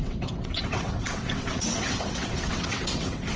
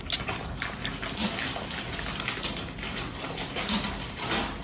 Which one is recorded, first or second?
second